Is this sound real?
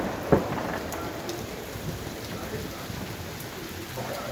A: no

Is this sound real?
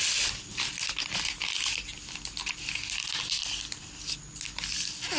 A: yes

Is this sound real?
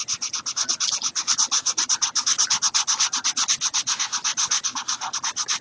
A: yes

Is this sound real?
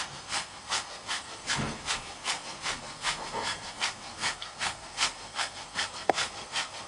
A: no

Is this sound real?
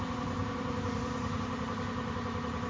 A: no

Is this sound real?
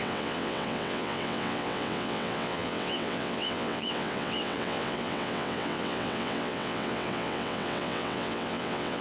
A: no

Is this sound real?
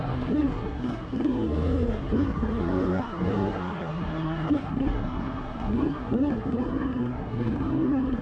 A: no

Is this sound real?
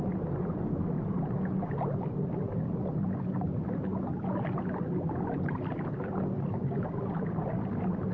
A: yes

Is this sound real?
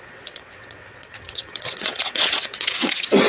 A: no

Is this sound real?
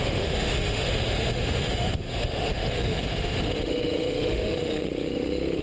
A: no